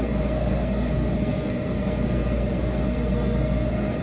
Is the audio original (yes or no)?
no